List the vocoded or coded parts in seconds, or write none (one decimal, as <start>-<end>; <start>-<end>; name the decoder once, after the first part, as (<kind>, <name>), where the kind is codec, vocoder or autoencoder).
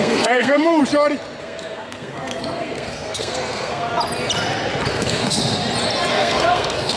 0.0-0.8 (codec, SNAC); 1.4-3.9; 4.9-5.4; 6.1-7.0